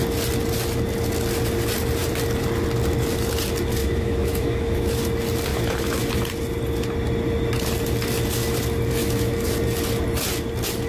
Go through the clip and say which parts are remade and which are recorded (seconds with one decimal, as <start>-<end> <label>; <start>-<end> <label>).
0.0-3.8 recorded; 3.8-5.0 remade; 5.0-5.5 recorded; 5.5-6.0 remade; 6.0-9.0 recorded; 9.0-9.5 remade; 9.5-10.9 recorded